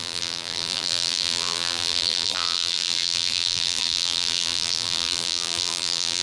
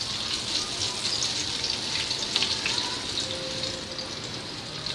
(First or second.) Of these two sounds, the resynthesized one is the first